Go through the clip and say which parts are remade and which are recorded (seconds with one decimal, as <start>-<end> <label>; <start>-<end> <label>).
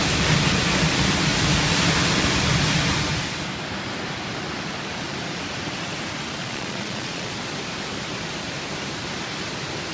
0.0-6.4 recorded; 6.4-7.3 remade; 7.3-9.9 recorded